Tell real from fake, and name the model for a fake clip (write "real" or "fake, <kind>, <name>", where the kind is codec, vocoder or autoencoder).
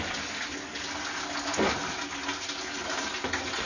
real